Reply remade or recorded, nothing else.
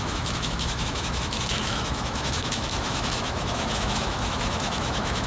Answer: remade